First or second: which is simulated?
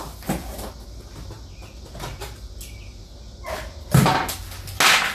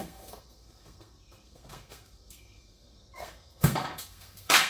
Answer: second